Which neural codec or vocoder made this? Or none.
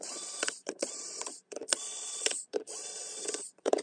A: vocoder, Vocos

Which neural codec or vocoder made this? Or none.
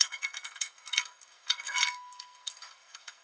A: codec, SNAC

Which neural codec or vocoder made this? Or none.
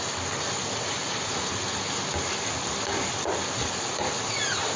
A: none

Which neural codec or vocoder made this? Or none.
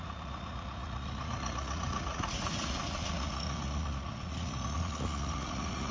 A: vocoder, Vocos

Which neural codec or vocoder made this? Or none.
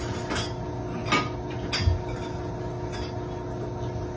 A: none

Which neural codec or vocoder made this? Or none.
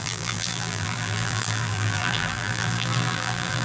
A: vocoder, BigVGAN v2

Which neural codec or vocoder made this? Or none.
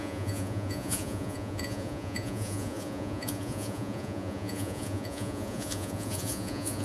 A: vocoder, Vocos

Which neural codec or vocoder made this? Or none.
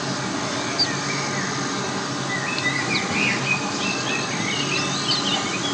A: none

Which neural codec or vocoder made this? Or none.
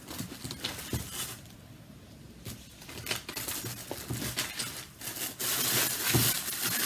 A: none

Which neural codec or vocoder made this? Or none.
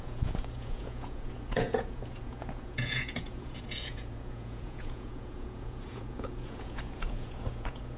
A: vocoder, Vocos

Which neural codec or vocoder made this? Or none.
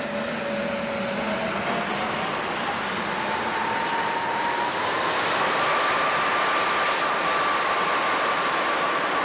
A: none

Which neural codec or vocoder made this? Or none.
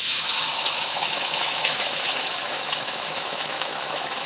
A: autoencoder, DAC-VAE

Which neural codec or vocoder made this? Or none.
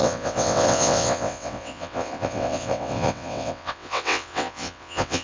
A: vocoder, WaveNeXt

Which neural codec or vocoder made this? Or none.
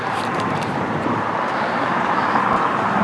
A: vocoder, BigVGAN v2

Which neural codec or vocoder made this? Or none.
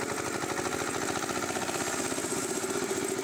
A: none